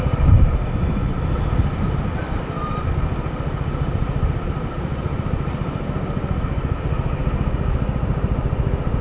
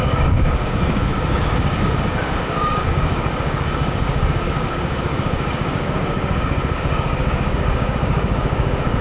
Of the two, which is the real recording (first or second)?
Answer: first